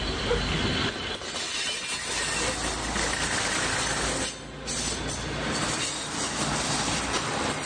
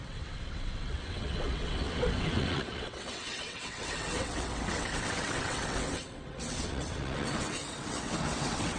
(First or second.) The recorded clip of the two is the first